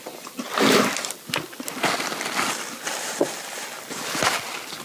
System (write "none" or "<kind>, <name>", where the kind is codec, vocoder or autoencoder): none